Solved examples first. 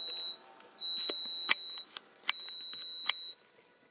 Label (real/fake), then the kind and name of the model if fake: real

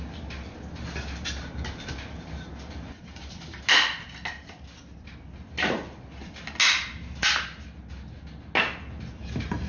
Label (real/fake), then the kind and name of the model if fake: real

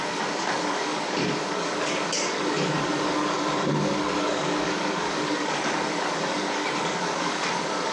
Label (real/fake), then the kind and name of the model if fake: fake, codec, DAC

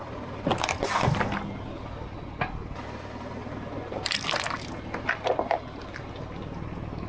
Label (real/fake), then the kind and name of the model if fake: real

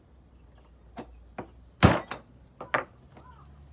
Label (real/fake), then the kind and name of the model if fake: real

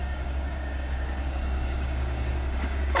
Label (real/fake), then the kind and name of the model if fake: fake, codec, DAC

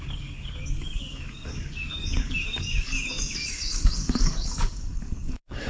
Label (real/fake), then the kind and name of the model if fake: fake, codec, DAC